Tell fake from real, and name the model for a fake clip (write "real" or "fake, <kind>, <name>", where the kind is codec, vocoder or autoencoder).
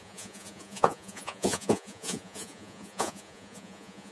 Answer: fake, vocoder, Vocos